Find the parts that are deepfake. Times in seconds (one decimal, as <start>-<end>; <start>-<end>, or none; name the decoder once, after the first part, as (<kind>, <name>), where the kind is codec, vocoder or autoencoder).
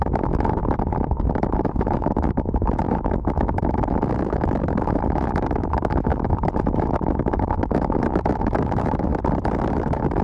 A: 0.0-0.6 (autoencoder, DAC-VAE); 1.5-6.1; 6.8-9.1; 9.7-10.2